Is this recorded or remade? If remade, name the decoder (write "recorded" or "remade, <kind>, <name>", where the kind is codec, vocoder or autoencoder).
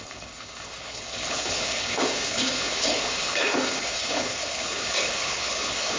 remade, codec, HILCodec